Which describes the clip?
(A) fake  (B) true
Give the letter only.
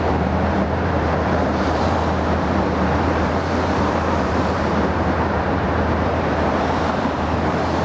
A